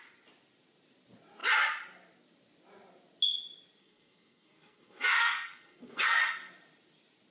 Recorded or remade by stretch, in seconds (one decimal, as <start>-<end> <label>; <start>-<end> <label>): 0.0-3.8 recorded; 3.8-6.2 remade; 6.2-7.3 recorded